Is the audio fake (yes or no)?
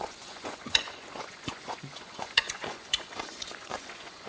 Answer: yes